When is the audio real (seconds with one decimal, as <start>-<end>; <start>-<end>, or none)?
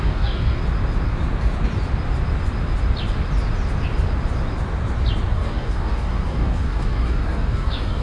0.6-5.3